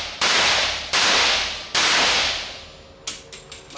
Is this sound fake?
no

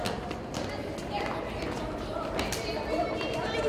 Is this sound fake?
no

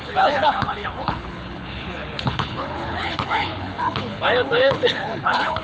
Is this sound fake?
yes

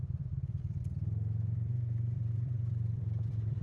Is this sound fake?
yes